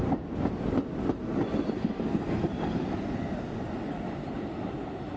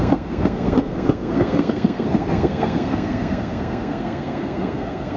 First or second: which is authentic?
first